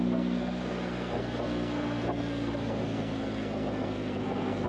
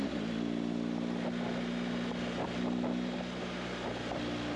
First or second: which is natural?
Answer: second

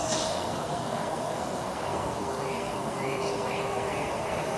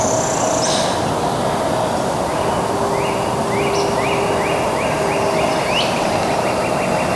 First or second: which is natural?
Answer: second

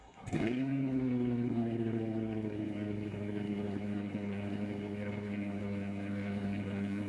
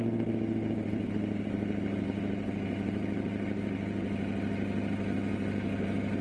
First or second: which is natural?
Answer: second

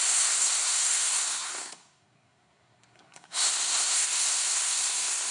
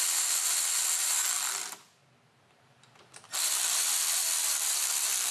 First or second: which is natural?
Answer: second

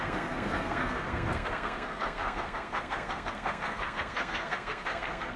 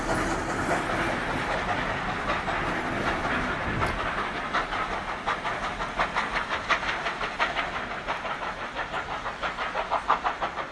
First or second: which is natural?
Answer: second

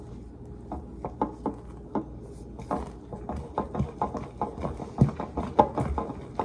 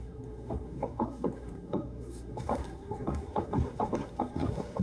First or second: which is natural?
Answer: first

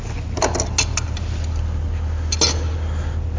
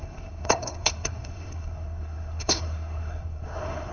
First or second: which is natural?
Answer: first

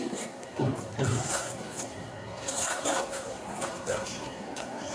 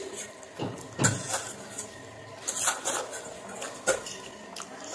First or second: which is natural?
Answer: second